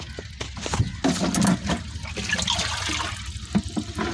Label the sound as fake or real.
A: real